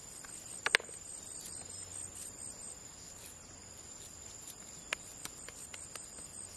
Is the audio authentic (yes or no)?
yes